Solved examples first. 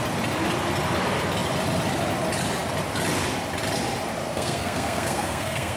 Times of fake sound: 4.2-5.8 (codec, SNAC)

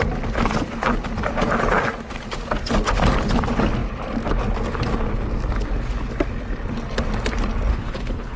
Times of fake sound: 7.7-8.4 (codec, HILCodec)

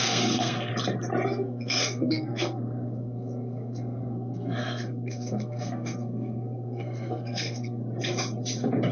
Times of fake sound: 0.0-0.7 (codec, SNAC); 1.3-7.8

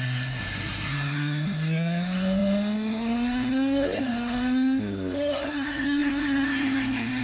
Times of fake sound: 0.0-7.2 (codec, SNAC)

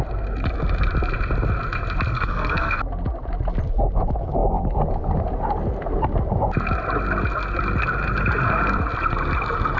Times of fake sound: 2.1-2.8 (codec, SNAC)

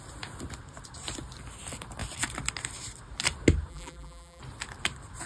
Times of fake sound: 3.7-4.4 (vocoder, BigVGAN v2)

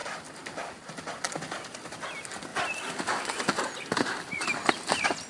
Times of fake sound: 0.0-1.2 (vocoder, BigVGAN v2)